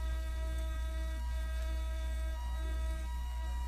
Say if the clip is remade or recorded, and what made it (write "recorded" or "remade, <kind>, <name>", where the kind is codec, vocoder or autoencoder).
remade, codec, SNAC